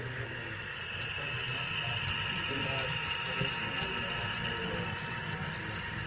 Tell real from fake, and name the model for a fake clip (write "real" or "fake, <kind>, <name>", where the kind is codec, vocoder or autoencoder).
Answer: real